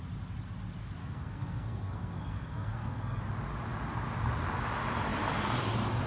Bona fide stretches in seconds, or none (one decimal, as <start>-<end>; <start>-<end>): 0.0-1.0; 3.2-6.1